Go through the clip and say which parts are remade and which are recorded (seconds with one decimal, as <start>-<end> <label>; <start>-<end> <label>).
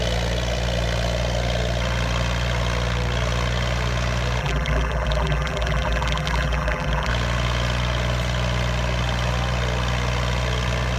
0.0-4.4 recorded; 4.4-7.1 remade; 7.1-11.0 recorded